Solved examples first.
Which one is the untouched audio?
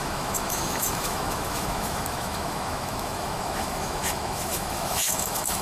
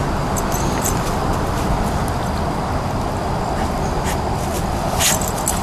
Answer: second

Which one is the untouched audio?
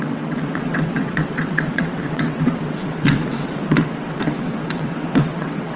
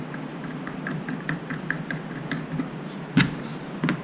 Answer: second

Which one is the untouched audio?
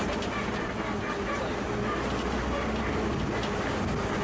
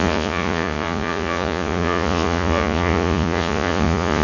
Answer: first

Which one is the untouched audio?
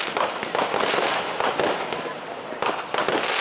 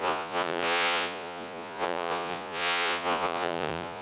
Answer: first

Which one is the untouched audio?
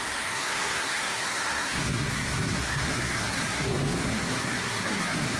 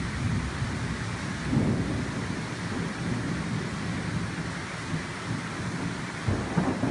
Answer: second